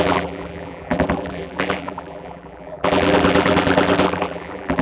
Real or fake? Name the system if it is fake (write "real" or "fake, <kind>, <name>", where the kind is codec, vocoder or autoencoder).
fake, vocoder, BigVGAN v2